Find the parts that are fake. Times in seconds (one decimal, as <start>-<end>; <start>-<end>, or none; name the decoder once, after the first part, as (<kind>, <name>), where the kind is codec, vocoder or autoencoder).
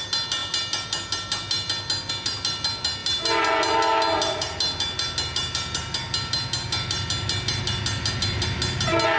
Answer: none